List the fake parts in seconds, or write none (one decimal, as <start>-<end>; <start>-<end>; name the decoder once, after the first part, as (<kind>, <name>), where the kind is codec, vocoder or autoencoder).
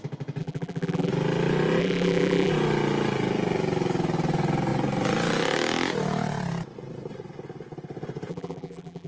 0.4-1.1 (vocoder, BigVGAN v2); 1.8-2.5; 8.3-9.1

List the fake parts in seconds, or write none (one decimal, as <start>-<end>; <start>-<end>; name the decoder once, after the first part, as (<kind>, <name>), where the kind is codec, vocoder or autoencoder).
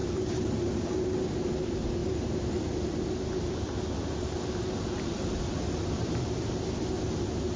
0.0-0.5 (vocoder, BigVGAN v2); 2.0-6.3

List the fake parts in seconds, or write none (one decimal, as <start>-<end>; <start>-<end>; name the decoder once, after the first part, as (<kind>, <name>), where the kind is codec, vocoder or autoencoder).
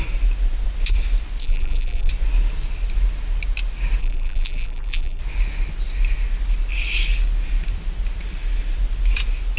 1.4-2.1 (vocoder, BigVGAN v2); 4.0-5.2